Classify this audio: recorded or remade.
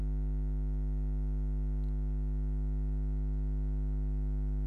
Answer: recorded